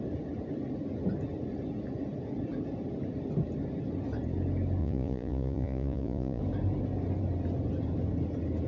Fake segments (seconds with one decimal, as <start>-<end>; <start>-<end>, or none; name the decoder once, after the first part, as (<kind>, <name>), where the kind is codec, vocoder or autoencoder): 4.8-6.4 (vocoder, Vocos)